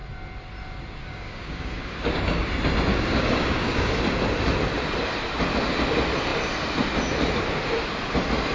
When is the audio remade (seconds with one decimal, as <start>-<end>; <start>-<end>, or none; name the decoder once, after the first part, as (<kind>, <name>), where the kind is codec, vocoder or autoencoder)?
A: 1.0-2.5 (codec, DAC); 2.9-4.0